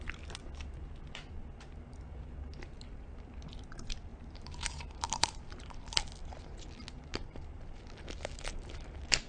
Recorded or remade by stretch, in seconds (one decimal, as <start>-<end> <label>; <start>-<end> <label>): 0.0-4.1 recorded; 4.1-6.0 remade; 6.0-7.1 recorded; 7.1-7.8 remade; 7.8-9.3 recorded